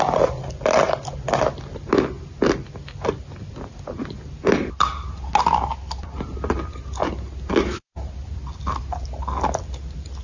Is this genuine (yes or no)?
yes